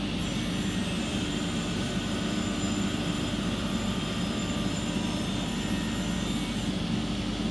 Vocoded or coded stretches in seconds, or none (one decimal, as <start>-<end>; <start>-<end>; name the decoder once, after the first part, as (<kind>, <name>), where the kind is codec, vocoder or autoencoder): 1.1-5.6 (vocoder, BigVGAN v2)